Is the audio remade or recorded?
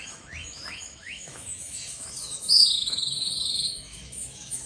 remade